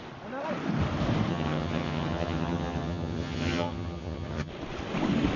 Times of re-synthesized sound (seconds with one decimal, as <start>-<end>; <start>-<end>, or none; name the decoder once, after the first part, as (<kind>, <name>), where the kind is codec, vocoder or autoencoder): 1.3-4.5 (vocoder, HiFi-GAN)